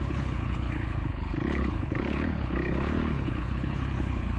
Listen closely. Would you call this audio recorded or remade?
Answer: remade